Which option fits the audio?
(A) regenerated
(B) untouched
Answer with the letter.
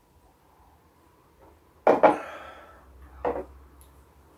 B